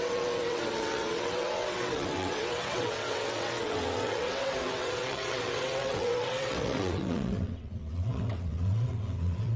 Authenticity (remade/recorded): remade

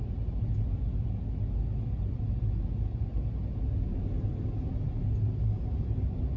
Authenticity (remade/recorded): recorded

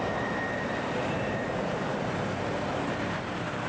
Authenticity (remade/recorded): remade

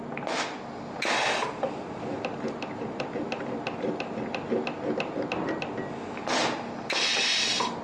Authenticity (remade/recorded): recorded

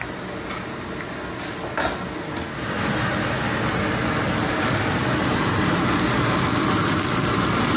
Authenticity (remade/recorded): recorded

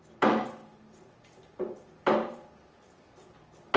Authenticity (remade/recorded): recorded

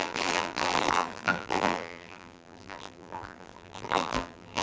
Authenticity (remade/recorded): remade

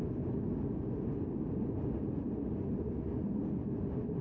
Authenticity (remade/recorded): recorded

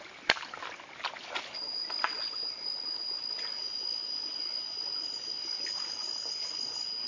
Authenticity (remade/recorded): recorded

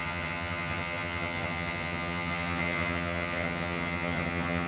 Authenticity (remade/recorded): remade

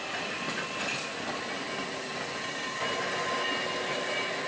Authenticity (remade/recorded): recorded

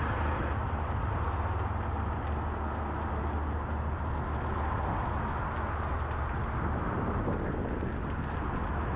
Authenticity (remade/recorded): recorded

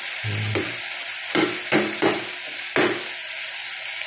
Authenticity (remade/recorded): recorded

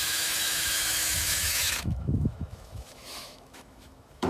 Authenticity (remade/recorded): remade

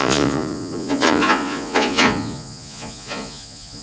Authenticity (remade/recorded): remade